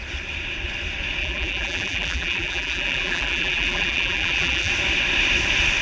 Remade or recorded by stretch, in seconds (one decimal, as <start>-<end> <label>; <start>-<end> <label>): 0.0-1.2 recorded; 1.2-4.7 remade; 4.7-5.8 recorded